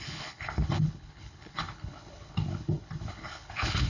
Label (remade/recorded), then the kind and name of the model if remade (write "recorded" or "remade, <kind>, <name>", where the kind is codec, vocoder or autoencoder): remade, codec, HILCodec